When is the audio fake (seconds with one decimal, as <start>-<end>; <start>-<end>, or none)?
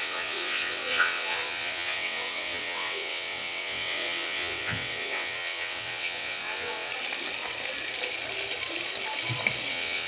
0.0-6.9; 9.7-10.1